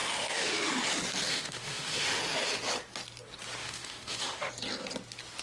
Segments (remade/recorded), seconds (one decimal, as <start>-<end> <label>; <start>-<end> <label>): 0.0-0.7 remade; 0.7-1.3 recorded; 1.3-2.2 remade; 2.2-3.6 recorded; 3.6-4.5 remade; 4.5-5.4 recorded